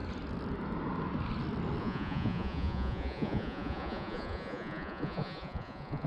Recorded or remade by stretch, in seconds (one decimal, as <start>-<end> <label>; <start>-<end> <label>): 0.0-1.8 recorded; 1.8-6.1 remade